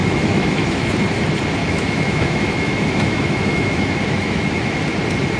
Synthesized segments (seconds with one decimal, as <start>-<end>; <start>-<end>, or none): 0.0-0.9; 1.6-4.8